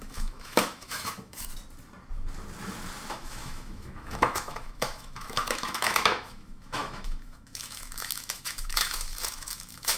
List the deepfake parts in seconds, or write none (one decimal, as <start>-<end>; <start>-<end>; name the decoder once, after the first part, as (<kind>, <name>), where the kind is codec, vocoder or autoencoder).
0.0-1.5 (autoencoder, DAC-VAE); 3.1-10.0